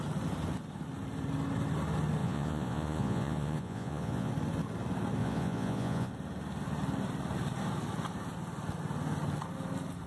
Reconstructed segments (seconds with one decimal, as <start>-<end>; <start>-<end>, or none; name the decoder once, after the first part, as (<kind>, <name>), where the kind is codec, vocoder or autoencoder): 2.2-4.3 (vocoder, Vocos); 5.2-6.1